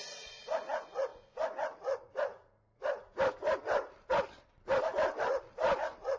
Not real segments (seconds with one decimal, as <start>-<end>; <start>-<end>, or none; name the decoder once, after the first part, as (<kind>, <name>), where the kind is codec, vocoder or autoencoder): none

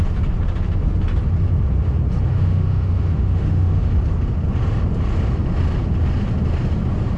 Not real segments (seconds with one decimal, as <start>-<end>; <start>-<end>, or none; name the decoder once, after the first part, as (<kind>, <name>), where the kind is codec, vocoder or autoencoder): 2.3-3.8 (autoencoder, DAC-VAE)

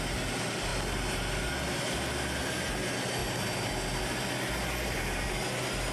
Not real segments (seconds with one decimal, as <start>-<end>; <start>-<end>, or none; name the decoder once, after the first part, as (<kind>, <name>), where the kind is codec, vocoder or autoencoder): none

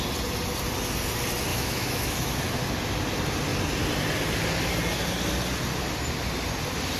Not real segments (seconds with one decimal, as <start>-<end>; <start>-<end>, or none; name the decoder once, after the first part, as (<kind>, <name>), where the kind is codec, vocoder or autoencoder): 1.5-2.4 (autoencoder, DAC-VAE)